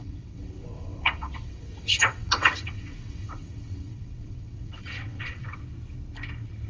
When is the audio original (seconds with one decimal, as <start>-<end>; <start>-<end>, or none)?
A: 5.6-6.7